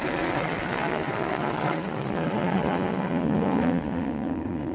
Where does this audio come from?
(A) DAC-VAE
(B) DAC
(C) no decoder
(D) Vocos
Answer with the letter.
D